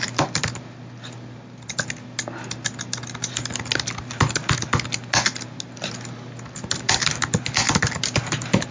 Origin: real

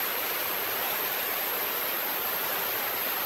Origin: real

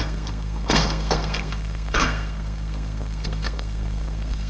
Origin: fake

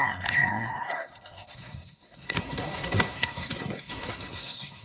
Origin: fake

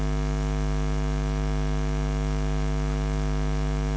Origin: real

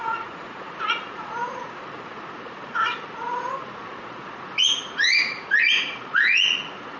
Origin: fake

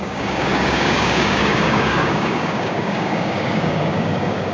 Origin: fake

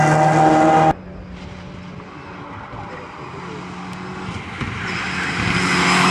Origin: real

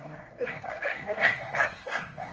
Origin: fake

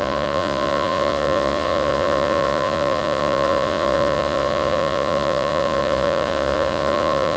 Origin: fake